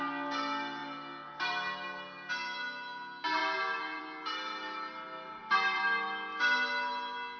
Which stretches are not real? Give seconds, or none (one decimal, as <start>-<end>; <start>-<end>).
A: none